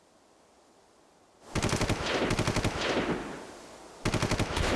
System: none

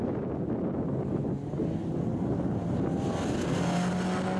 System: none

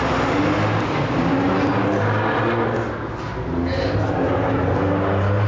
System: none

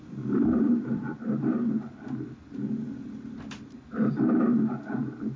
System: none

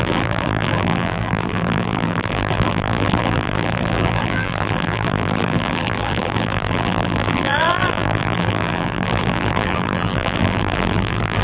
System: vocoder, BigVGAN v2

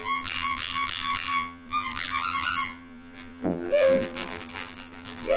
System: vocoder, BigVGAN v2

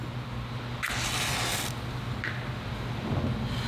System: none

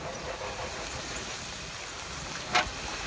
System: none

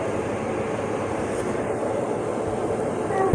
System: vocoder, BigVGAN v2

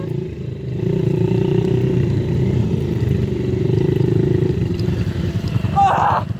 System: vocoder, BigVGAN v2